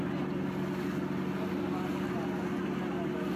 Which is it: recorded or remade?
recorded